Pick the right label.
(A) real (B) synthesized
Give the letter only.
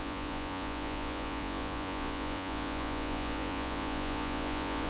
B